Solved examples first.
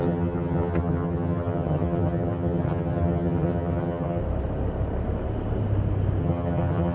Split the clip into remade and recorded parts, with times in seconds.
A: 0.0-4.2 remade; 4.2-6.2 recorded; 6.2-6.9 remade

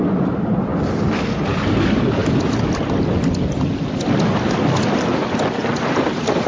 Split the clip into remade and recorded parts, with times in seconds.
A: 0.0-6.5 recorded

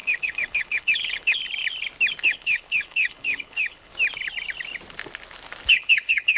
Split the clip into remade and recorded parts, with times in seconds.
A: 0.0-1.4 remade; 1.4-2.2 recorded; 2.2-3.9 remade; 3.9-5.7 recorded; 5.7-6.4 remade

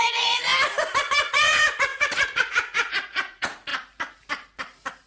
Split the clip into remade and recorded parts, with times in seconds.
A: 0.0-0.5 remade; 0.5-1.3 recorded; 1.3-3.7 remade; 3.7-5.1 recorded

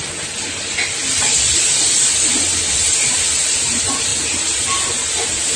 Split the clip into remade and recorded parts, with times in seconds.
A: 0.0-5.6 recorded

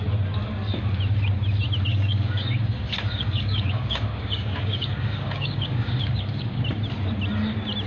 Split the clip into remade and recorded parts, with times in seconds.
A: 0.0-1.9 recorded; 1.9-6.6 remade; 6.6-7.9 recorded

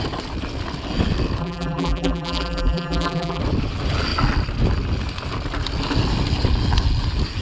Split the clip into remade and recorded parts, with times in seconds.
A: 0.0-1.4 recorded; 1.4-3.4 remade; 3.4-7.4 recorded